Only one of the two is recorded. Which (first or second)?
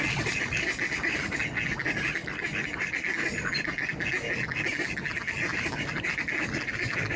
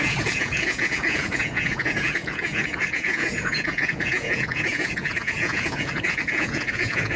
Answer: first